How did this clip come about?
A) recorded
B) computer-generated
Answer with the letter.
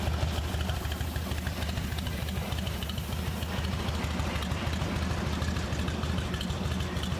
A